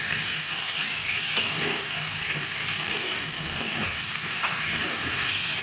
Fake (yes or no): yes